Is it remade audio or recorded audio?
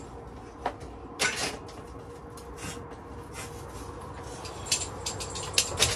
recorded